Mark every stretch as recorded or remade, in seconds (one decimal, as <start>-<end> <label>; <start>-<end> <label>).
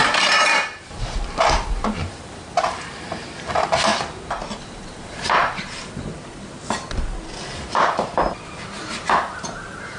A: 0.0-3.9 remade; 3.9-4.6 recorded; 4.6-6.0 remade; 6.0-7.5 recorded; 7.5-8.2 remade; 8.2-8.8 recorded; 8.8-10.0 remade